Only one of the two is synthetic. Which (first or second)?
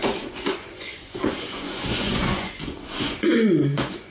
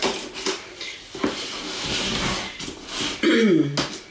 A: first